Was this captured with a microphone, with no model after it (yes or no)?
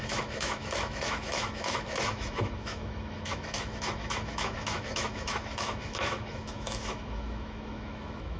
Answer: no